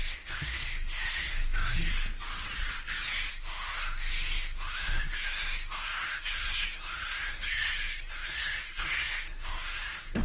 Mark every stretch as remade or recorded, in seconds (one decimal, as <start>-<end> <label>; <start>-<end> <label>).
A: 0.0-1.9 remade; 1.9-3.3 recorded; 3.3-10.2 remade